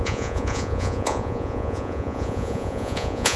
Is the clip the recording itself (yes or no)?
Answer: no